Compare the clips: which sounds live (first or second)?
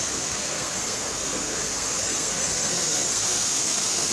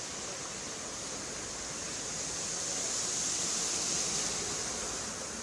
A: second